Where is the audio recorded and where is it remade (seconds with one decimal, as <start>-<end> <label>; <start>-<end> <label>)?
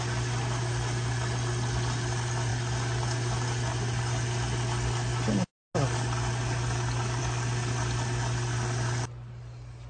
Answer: 0.0-9.9 recorded